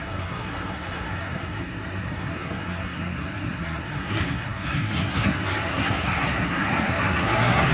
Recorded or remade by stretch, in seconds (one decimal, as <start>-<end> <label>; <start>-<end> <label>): 0.0-7.7 remade